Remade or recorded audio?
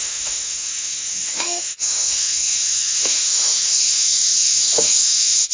remade